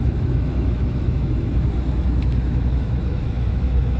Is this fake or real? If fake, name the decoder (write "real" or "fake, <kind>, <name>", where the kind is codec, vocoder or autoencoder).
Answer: fake, autoencoder, DAC-VAE